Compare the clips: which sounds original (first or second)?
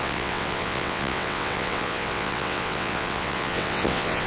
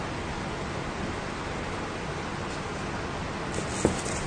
second